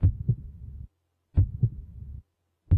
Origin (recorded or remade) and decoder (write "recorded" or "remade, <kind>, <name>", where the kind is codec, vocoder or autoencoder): recorded